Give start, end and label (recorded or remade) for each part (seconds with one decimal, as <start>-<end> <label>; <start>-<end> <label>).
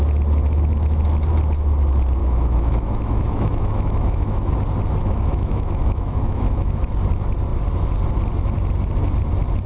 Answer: 0.0-2.2 recorded; 2.2-4.5 remade; 4.5-5.0 recorded; 5.0-6.9 remade; 6.9-9.7 recorded